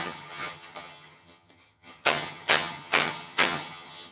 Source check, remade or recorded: remade